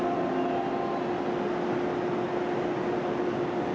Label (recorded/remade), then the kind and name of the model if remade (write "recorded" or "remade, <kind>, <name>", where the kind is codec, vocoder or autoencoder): recorded